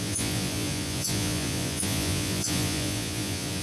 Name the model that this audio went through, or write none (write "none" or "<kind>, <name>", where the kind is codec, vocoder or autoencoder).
vocoder, Vocos